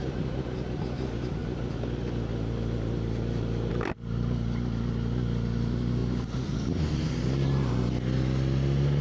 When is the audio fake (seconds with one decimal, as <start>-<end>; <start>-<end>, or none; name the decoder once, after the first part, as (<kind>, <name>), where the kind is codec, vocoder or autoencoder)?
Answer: none